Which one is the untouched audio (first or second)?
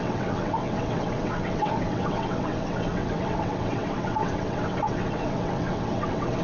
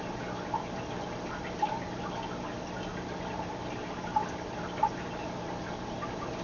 second